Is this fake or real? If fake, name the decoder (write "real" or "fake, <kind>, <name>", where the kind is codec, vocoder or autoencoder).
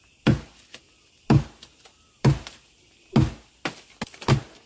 real